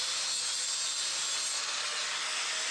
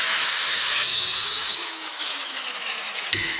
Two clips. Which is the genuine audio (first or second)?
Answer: first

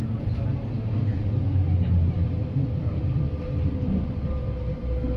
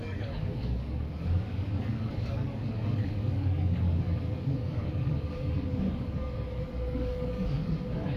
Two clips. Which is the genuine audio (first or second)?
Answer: first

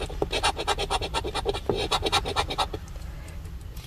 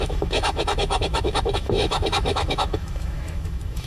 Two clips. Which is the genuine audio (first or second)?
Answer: first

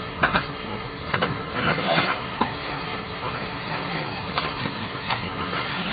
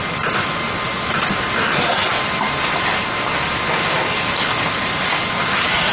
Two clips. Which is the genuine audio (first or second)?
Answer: second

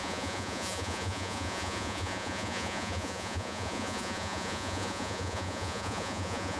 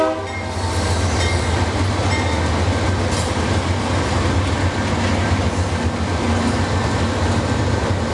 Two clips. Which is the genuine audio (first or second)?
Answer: second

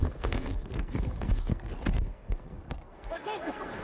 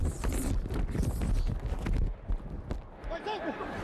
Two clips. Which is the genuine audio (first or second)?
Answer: second